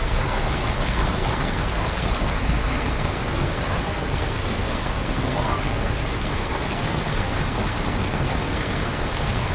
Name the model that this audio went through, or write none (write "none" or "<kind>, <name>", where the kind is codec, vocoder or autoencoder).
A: codec, SNAC